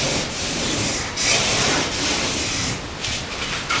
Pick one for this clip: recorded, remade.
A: remade